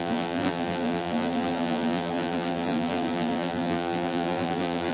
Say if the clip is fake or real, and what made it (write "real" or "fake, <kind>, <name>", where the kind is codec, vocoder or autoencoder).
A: fake, vocoder, BigVGAN v2